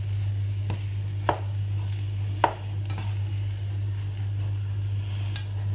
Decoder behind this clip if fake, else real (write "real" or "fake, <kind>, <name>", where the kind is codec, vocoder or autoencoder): real